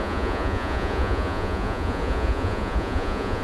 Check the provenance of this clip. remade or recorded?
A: remade